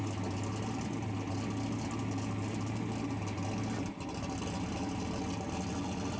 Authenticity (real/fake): real